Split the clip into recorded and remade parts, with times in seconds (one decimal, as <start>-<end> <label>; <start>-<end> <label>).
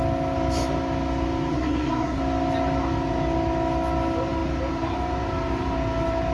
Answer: 0.0-1.5 recorded; 1.5-2.2 remade; 2.2-6.3 recorded